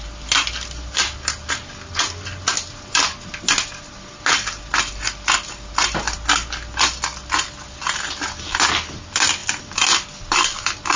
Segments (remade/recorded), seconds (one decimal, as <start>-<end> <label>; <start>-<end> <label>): 0.0-11.0 recorded